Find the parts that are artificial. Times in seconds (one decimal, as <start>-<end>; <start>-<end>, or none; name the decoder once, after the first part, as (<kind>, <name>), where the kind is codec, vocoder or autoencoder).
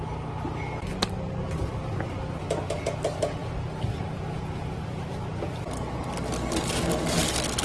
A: none